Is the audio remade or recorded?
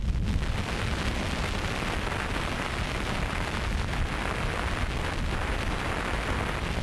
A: recorded